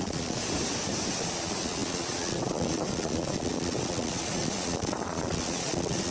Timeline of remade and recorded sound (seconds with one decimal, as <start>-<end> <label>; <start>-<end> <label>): 0.0-0.4 remade; 0.4-1.2 recorded; 1.2-6.1 remade